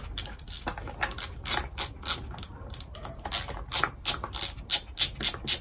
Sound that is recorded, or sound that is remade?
recorded